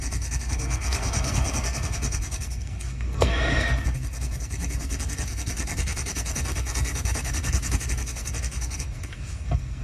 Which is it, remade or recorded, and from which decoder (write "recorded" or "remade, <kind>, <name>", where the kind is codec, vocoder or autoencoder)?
remade, codec, SNAC